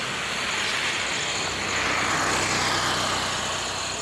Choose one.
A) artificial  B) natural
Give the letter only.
B